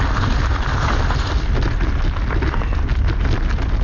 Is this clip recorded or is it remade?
recorded